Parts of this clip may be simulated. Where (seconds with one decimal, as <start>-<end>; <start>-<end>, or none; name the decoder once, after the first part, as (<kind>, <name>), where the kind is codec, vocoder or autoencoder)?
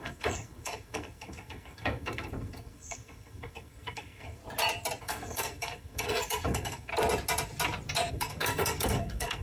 0.0-4.4 (codec, SNAC); 5.0-6.9; 8.1-9.4